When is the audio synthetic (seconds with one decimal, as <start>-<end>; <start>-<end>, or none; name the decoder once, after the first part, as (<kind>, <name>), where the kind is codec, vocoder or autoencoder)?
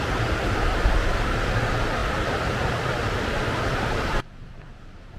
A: 2.0-5.2 (vocoder, BigVGAN v2)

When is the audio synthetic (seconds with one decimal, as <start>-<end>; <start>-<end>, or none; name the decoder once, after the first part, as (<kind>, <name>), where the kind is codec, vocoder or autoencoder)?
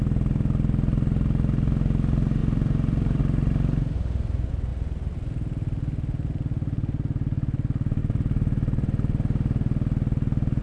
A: 2.4-3.2 (vocoder, BigVGAN v2)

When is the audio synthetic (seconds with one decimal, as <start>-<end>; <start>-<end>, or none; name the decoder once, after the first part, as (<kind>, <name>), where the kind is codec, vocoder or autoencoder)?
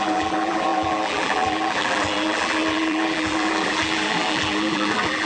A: 0.0-5.3 (vocoder, BigVGAN v2)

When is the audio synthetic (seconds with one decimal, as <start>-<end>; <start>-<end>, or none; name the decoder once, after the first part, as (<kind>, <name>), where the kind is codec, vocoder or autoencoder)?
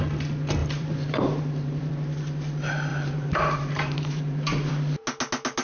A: 0.6-1.9 (vocoder, BigVGAN v2); 2.9-4.7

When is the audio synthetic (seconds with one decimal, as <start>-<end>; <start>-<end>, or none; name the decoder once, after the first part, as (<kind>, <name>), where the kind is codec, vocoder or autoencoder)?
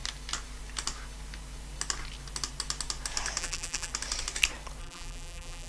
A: 3.4-3.9 (vocoder, BigVGAN v2); 4.8-5.7